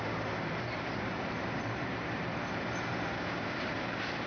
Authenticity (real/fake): fake